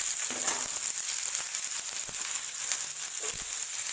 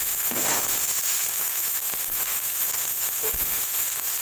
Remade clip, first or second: second